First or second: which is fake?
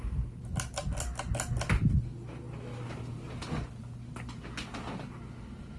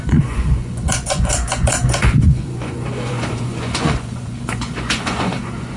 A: second